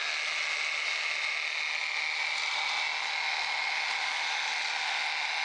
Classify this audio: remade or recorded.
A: recorded